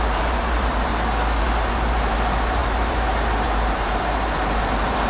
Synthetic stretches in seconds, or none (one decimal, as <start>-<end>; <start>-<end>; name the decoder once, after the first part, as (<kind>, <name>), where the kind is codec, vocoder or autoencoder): 0.0-0.9 (vocoder, BigVGAN v2); 1.4-5.1